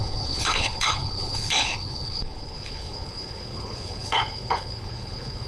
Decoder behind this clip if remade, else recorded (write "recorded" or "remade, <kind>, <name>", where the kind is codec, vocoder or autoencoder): remade, codec, HILCodec